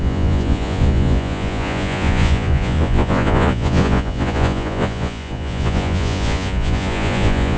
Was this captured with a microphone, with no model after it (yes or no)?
no